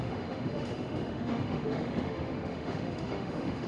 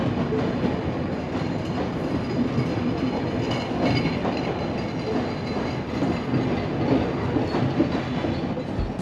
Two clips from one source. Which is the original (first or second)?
second